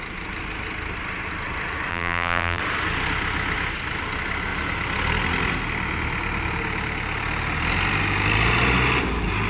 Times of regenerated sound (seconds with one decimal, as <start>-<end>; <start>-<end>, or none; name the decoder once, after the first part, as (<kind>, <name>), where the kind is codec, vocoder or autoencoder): 1.9-2.6 (vocoder, BigVGAN v2)